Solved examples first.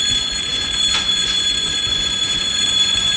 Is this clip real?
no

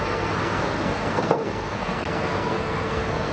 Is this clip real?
no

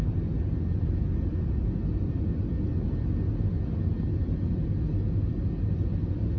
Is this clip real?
yes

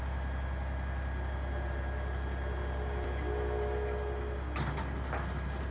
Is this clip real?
yes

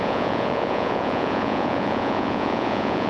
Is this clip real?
no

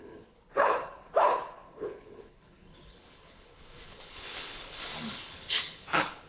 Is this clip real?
no